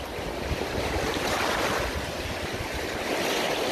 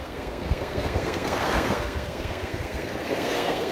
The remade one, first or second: second